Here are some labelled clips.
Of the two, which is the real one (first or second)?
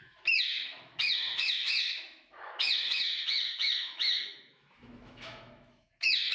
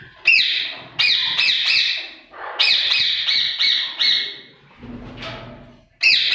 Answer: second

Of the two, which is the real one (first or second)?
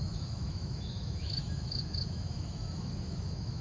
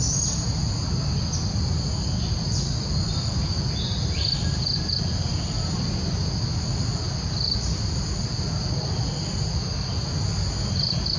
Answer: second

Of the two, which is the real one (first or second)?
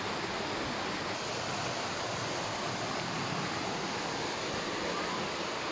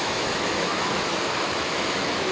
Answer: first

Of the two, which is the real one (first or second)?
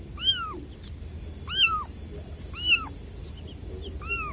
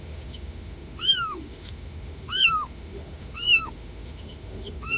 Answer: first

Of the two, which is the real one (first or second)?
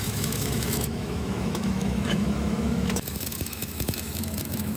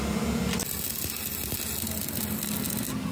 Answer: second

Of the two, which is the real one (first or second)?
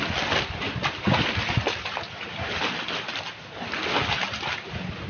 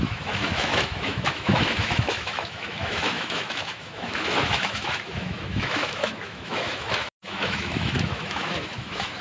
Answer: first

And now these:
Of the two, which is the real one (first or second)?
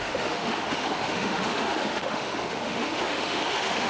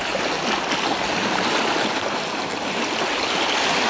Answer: second